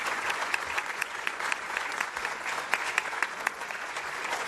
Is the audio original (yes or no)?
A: no